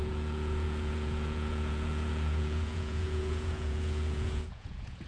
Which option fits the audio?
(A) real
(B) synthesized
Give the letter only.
B